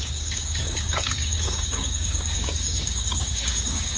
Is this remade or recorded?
remade